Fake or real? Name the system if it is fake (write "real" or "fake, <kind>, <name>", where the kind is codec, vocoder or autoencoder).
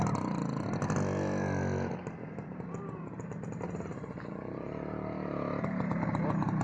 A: real